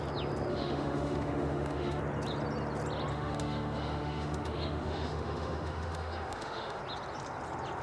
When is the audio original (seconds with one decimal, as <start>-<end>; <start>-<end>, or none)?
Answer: 0.0-0.5; 2.0-3.1; 6.8-7.8